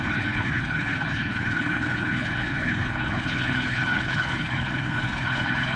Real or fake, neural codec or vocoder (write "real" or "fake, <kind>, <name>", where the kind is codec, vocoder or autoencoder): fake, codec, HILCodec